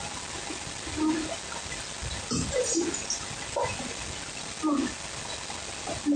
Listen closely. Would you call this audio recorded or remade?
recorded